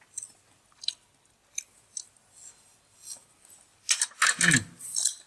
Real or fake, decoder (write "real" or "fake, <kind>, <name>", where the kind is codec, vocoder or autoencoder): real